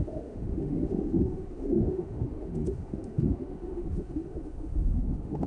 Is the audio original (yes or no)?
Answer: no